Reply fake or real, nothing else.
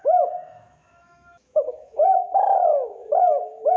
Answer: fake